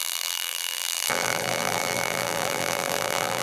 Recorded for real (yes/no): no